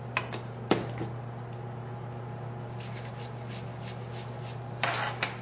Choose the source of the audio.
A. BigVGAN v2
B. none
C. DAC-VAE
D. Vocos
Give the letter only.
B